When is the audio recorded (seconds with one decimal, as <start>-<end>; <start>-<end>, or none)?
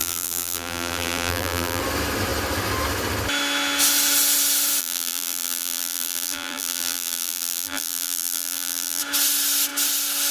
1.8-4.8; 9.0-10.3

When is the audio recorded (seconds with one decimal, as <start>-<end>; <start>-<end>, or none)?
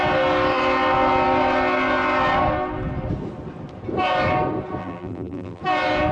0.0-4.8; 5.6-6.1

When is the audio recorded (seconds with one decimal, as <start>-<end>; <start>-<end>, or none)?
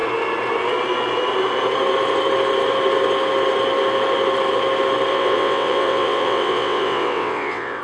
0.0-5.1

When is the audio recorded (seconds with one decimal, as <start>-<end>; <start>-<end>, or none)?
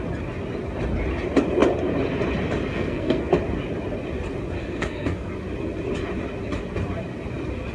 0.0-2.7; 3.3-4.6; 5.3-7.7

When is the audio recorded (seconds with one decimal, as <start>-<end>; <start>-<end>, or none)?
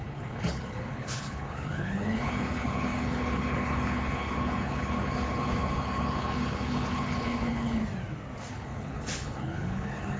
7.8-8.5